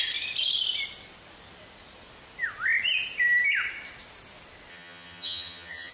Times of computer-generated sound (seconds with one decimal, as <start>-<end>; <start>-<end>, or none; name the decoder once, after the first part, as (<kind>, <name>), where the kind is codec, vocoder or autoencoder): 4.7-5.9 (vocoder, HiFi-GAN)